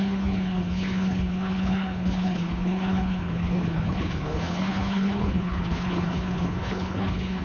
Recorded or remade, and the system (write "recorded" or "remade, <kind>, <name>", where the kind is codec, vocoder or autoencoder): remade, codec, HILCodec